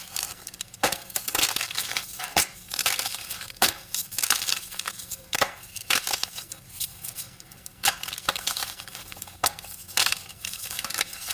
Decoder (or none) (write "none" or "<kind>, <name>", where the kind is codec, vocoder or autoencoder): codec, SNAC